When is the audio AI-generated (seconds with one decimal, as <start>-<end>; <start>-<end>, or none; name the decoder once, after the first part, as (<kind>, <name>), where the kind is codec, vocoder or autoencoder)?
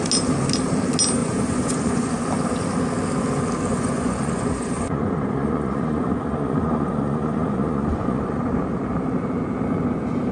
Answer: 1.2-2.1 (vocoder, Vocos); 3.7-8.4